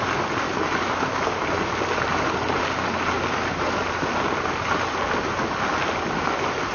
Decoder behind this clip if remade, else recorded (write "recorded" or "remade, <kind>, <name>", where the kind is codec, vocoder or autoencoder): recorded